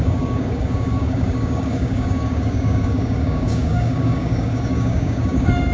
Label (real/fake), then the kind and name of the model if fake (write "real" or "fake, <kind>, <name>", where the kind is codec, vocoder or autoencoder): fake, codec, DAC